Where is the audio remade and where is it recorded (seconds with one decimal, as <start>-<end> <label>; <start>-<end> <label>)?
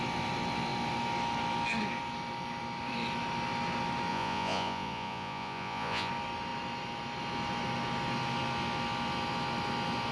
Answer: 0.0-4.1 recorded; 4.1-6.1 remade; 6.1-10.1 recorded